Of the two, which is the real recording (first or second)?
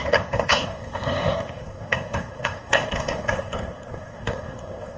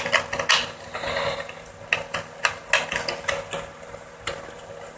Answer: second